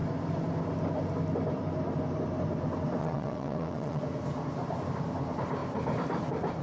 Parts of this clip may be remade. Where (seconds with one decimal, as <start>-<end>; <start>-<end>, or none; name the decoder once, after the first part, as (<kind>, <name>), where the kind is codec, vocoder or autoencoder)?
3.0-4.0 (vocoder, WaveNeXt)